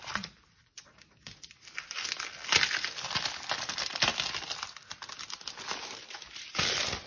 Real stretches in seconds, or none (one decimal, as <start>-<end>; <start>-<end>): 0.0-7.1